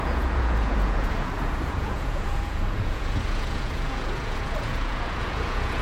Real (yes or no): no